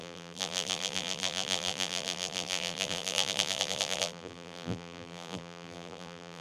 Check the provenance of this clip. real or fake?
fake